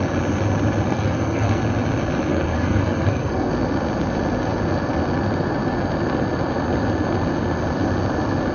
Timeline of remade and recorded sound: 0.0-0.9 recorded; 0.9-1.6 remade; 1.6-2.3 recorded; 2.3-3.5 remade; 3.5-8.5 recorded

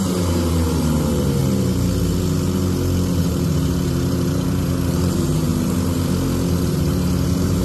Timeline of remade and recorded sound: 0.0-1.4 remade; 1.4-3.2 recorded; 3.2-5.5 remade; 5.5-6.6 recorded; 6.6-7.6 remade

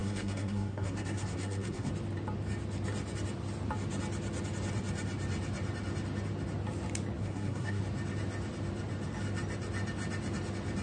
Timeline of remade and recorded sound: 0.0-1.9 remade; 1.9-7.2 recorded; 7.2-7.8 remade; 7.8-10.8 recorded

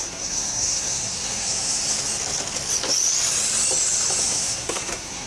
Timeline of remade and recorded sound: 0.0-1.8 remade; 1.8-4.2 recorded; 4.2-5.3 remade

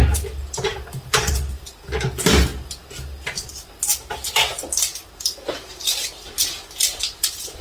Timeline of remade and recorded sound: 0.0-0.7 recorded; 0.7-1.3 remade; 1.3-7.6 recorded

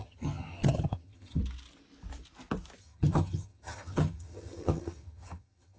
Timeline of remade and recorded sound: 0.0-1.4 remade; 1.4-2.8 recorded; 2.8-5.8 remade

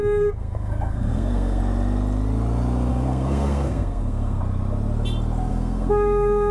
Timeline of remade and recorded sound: 0.0-1.6 remade; 1.6-2.9 recorded; 2.9-4.4 remade; 4.4-5.5 recorded; 5.5-6.5 remade